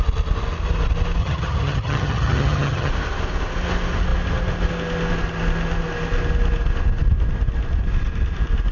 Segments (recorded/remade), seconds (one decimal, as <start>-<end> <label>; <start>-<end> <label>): 0.0-1.2 recorded; 1.2-2.9 remade; 2.9-8.7 recorded